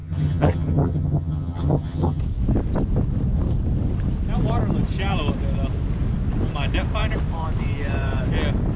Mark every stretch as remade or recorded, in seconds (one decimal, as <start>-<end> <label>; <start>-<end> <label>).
0.0-2.2 remade; 2.2-8.8 recorded